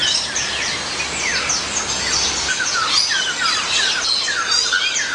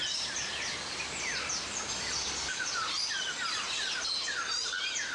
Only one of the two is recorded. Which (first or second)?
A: first